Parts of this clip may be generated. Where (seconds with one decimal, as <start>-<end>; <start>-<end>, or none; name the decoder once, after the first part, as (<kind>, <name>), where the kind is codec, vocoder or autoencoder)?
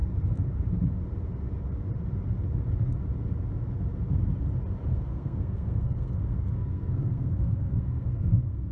4.9-8.7 (codec, SNAC)